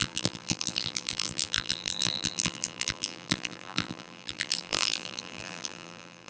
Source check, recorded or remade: remade